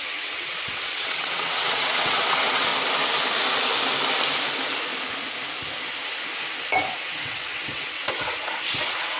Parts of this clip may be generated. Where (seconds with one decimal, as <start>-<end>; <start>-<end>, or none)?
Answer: 0.0-2.7; 7.0-9.2